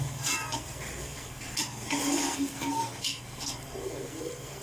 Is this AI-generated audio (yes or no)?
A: yes